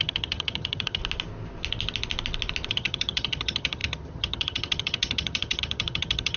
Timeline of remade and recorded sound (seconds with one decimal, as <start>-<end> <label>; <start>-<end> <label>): 0.0-1.0 remade; 1.0-2.7 recorded; 2.7-6.4 remade